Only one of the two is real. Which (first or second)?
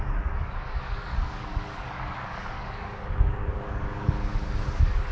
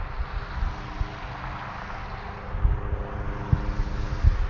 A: second